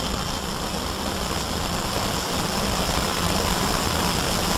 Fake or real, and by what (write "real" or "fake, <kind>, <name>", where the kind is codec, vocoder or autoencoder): real